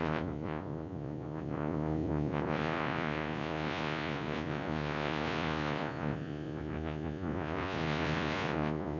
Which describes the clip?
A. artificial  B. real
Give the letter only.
A